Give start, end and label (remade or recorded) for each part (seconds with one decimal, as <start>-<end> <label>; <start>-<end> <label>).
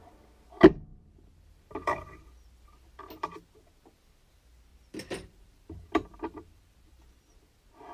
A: 0.0-0.9 recorded; 0.9-3.0 remade; 3.0-4.7 recorded; 4.7-7.4 remade; 7.4-7.9 recorded